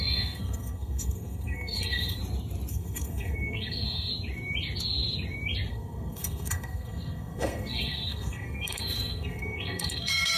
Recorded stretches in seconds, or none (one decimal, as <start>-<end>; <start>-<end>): 2.2-2.7; 4.1-5.7